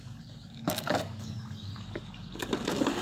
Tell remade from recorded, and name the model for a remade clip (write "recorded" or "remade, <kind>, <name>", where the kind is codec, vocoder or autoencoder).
remade, codec, DAC